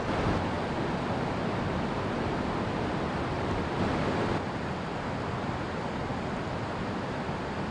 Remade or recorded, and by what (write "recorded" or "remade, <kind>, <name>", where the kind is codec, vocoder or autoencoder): recorded